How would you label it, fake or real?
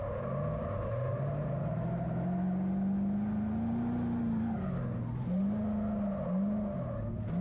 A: real